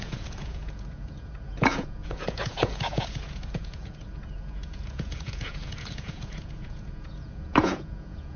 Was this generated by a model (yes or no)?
yes